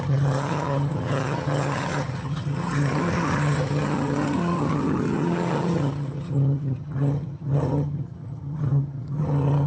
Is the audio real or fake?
fake